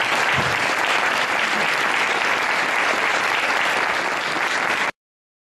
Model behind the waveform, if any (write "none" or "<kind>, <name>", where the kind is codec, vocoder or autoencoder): vocoder, BigVGAN v2